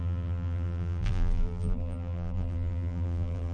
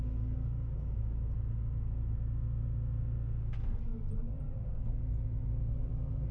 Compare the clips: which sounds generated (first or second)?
first